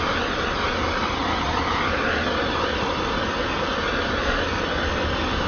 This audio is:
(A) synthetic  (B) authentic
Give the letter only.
B